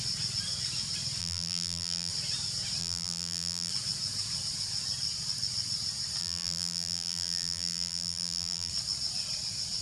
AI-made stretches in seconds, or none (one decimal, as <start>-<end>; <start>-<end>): 1.2-2.1; 2.8-3.7; 6.2-8.7

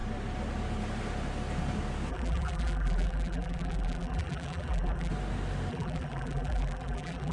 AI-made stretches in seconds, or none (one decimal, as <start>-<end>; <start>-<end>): 2.1-5.1; 5.7-7.3

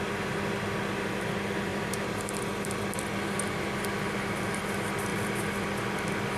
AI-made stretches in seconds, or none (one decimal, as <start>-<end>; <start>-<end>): none